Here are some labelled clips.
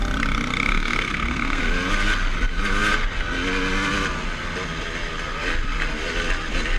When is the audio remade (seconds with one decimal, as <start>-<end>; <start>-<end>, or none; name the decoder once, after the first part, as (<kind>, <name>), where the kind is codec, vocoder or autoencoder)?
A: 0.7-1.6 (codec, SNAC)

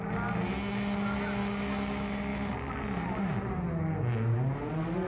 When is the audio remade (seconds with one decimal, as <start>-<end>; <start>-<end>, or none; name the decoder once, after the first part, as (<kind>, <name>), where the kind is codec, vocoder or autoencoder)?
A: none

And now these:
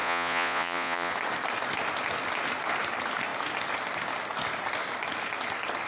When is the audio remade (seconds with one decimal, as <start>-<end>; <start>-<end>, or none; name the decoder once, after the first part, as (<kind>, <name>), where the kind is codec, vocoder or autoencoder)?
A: 0.0-1.1 (vocoder, Vocos)